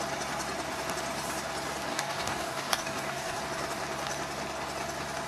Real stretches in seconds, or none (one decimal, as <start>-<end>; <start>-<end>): 0.0-1.9; 3.4-5.3